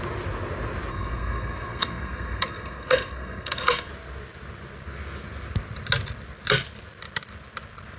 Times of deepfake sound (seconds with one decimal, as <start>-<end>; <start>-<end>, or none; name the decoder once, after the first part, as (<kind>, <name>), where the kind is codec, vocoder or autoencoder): 0.9-3.9 (codec, SNAC)